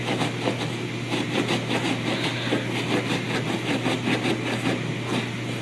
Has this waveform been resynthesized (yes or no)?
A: no